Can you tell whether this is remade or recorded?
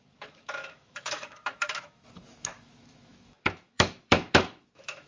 remade